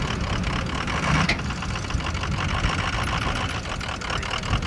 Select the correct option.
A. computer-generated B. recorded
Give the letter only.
B